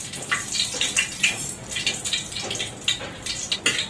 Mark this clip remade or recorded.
recorded